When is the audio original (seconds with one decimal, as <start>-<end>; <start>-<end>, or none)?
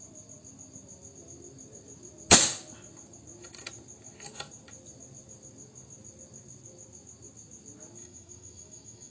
0.0-8.0